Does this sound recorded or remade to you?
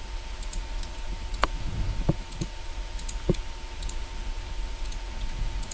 remade